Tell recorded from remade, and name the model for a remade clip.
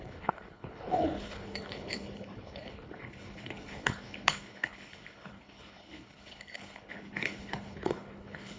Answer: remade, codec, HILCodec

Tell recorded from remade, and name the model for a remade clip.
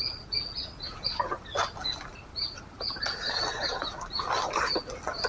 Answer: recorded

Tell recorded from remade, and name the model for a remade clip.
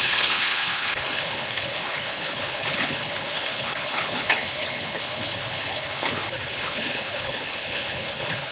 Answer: remade, codec, HILCodec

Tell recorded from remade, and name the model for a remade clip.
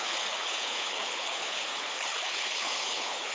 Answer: remade, codec, HILCodec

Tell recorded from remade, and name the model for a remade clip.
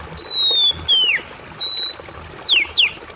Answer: recorded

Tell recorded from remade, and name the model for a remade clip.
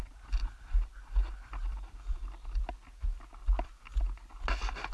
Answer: recorded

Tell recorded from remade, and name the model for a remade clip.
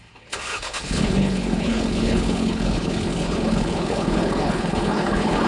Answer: remade, codec, HILCodec